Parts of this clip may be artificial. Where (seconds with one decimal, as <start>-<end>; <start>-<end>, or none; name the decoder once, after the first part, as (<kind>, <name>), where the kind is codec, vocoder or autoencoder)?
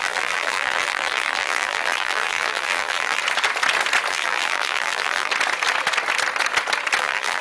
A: 0.0-3.2 (vocoder, BigVGAN v2); 4.1-5.3; 7.0-7.4